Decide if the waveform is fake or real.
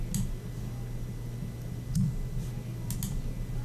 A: real